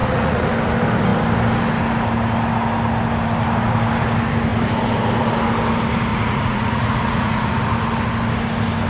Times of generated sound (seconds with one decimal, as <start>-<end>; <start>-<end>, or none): 0.0-0.5; 6.1-7.6